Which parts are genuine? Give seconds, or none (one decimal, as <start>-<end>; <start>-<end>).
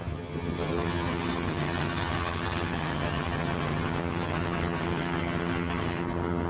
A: none